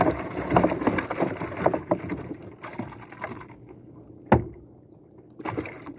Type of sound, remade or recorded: recorded